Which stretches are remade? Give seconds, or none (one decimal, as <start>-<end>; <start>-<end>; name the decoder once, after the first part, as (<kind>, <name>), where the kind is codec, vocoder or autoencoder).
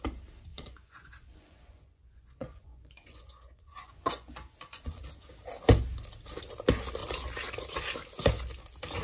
0.5-5.1 (vocoder, Vocos)